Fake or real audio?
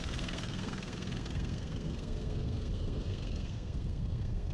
fake